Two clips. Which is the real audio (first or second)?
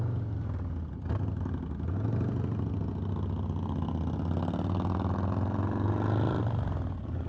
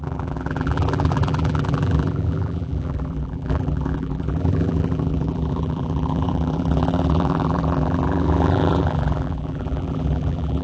first